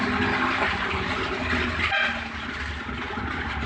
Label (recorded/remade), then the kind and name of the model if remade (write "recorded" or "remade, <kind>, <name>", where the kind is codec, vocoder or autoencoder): recorded